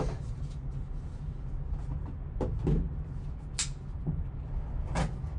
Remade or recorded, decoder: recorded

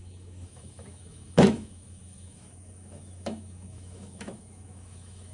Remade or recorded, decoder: remade, autoencoder, DAC-VAE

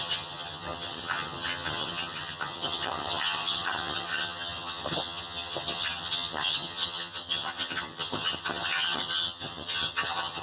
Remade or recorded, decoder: remade, vocoder, HiFi-GAN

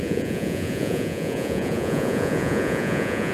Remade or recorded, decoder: remade, vocoder, Vocos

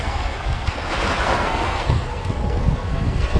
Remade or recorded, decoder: remade, codec, SNAC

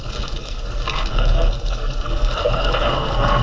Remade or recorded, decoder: remade, codec, SNAC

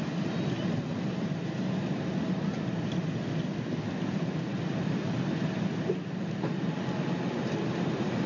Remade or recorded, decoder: recorded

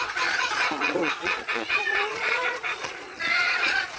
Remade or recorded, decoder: remade, vocoder, Vocos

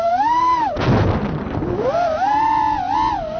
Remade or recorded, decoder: recorded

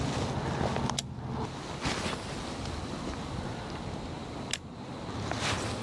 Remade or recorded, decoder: recorded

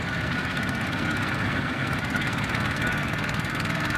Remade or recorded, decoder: remade, codec, SNAC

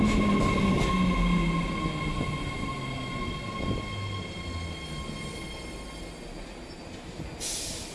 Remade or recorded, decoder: recorded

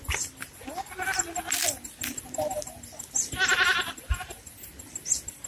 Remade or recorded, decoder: recorded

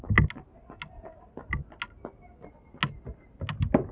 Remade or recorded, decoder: recorded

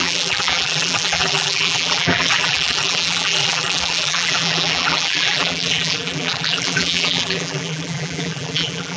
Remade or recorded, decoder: remade, vocoder, BigVGAN v2